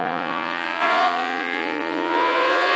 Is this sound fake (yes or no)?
yes